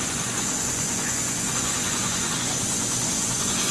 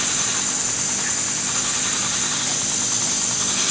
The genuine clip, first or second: second